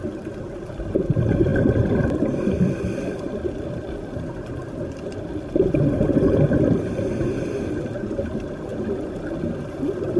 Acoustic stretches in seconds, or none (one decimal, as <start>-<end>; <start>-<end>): 0.0-1.5; 3.6-10.2